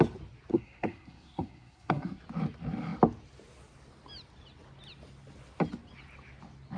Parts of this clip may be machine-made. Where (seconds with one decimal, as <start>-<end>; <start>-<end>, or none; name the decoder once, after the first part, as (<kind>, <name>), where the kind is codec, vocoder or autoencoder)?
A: 0.5-2.2 (codec, SNAC)